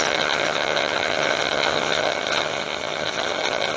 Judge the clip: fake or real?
fake